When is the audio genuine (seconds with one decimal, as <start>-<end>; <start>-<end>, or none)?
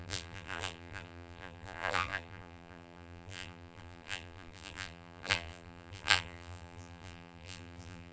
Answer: none